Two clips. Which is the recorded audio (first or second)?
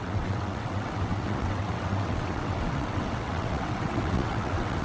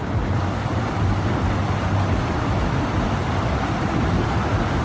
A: second